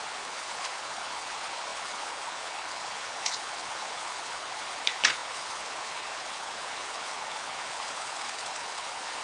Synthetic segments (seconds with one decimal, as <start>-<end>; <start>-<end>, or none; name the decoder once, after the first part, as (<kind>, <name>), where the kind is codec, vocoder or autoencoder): 0.0-9.2 (codec, HILCodec)